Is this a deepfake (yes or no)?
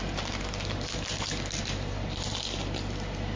no